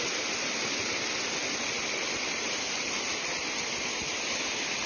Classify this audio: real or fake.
real